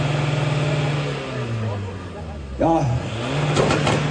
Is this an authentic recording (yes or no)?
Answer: yes